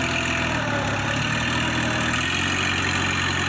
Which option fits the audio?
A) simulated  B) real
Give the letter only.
B